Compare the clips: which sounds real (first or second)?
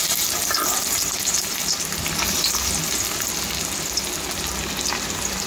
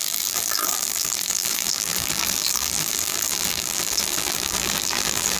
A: first